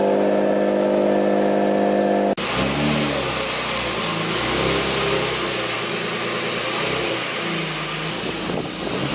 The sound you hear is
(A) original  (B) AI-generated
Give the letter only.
A